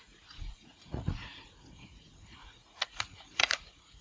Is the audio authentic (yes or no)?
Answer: no